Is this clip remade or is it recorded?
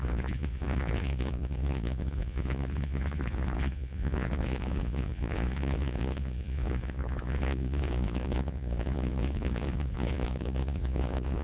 remade